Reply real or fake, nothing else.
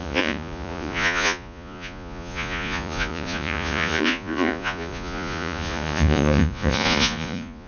fake